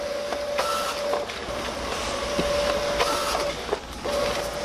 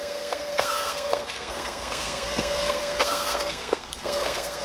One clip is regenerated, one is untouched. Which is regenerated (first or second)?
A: second